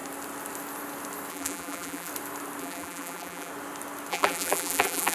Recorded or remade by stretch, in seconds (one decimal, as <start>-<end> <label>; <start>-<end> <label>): 0.0-1.3 recorded; 1.3-2.1 remade; 2.1-2.6 recorded; 2.6-3.5 remade; 3.5-4.1 recorded; 4.1-5.1 remade